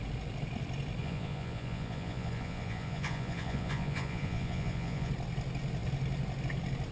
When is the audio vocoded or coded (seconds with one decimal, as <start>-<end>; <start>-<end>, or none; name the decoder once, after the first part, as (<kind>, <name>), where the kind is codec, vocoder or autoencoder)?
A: 1.0-5.1 (vocoder, Vocos)